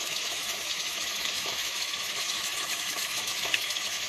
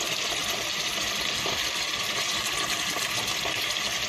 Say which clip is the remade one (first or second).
first